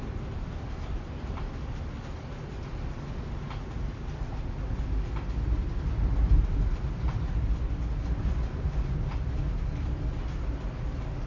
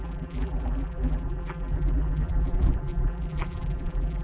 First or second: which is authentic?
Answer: first